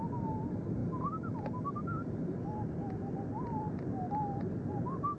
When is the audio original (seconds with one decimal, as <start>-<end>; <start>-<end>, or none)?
0.8-1.4